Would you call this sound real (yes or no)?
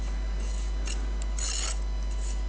yes